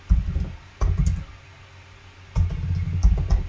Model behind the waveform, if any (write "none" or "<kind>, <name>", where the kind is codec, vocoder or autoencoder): none